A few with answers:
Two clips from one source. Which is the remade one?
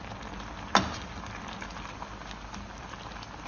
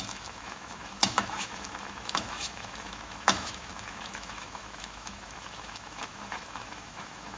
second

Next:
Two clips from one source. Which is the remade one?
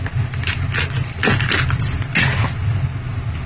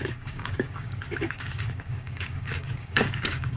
second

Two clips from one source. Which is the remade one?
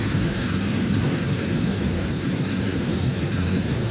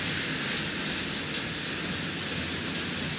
first